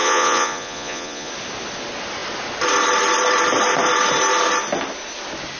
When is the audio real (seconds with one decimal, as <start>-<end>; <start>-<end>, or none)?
1.3-5.6